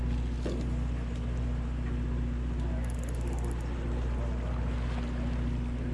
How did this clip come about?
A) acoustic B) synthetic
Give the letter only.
A